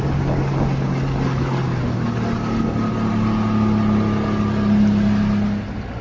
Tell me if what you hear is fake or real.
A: real